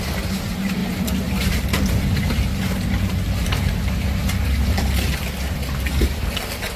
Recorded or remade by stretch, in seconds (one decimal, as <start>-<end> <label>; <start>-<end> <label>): 0.0-6.8 recorded